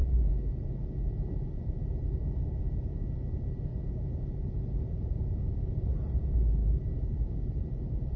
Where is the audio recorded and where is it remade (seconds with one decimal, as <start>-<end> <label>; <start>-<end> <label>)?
0.0-8.2 remade